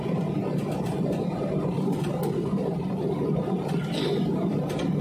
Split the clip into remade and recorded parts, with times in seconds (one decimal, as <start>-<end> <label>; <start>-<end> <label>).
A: 0.0-2.7 recorded; 2.7-3.8 remade; 3.8-5.0 recorded